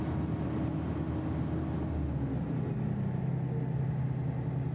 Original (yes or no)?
yes